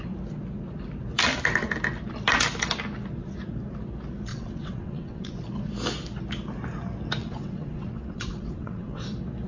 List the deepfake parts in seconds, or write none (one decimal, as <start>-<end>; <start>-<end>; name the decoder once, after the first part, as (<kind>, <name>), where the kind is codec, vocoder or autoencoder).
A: 4.3-5.3 (vocoder, WaveNeXt); 7.2-9.0